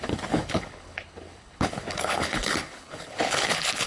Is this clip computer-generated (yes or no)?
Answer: yes